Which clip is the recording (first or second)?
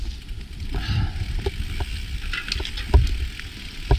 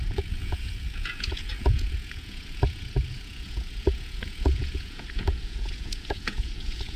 first